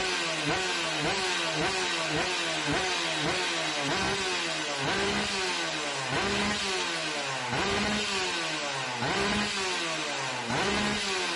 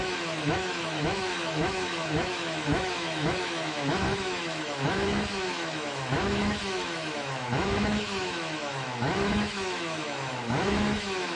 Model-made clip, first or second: second